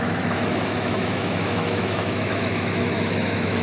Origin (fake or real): fake